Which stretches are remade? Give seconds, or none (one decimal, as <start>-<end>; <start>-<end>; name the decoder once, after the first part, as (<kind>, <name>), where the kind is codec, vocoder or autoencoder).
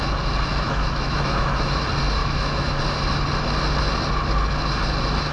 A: 0.5-1.8 (autoencoder, DAC-VAE); 2.2-2.8